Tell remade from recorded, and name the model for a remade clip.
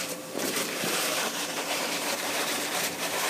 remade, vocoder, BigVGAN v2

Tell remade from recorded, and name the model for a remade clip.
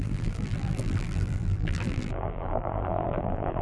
remade, vocoder, BigVGAN v2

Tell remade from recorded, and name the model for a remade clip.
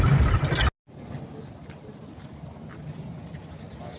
recorded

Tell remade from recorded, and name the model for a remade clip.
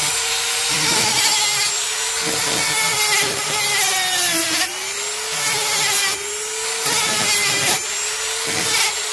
recorded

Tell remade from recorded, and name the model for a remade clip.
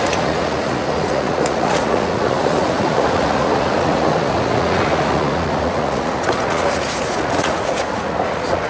remade, vocoder, Vocos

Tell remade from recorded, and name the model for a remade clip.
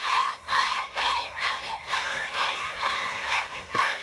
remade, codec, SNAC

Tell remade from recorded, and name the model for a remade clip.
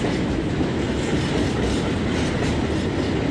recorded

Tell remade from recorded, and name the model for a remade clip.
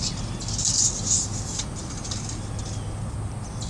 recorded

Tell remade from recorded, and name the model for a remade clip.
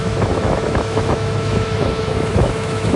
remade, autoencoder, DAC-VAE